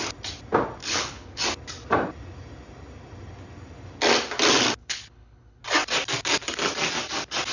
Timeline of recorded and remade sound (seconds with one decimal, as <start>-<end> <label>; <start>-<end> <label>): 0.0-0.8 recorded; 0.8-1.4 remade; 1.4-4.8 recorded; 4.8-5.6 remade; 5.6-7.5 recorded